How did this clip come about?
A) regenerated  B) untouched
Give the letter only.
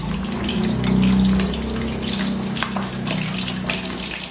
B